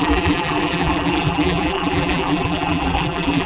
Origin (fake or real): fake